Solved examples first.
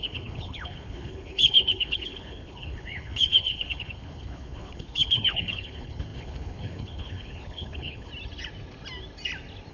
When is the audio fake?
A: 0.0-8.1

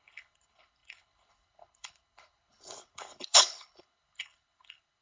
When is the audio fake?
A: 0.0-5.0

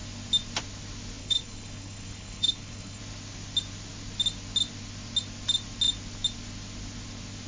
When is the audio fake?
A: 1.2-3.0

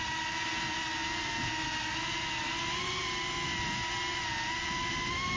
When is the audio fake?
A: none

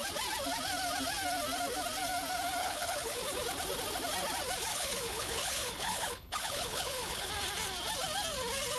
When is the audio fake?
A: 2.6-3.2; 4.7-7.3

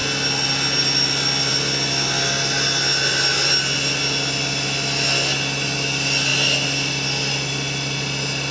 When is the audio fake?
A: none

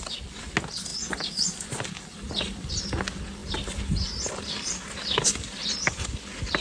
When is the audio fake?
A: none

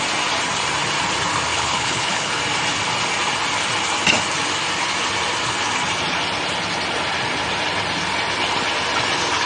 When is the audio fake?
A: 1.5-2.4